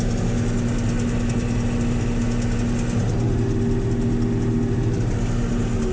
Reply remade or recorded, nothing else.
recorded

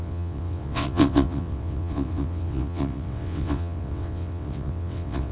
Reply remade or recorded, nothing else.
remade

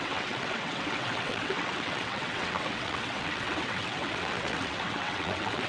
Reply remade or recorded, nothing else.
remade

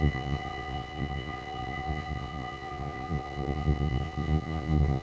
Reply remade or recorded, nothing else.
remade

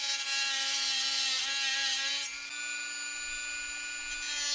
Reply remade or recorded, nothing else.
recorded